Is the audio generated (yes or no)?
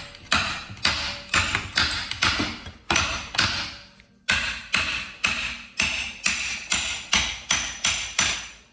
no